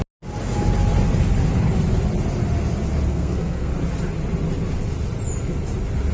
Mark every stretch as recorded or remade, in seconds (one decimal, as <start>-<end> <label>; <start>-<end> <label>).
0.0-3.1 recorded; 3.1-3.7 remade; 3.7-6.1 recorded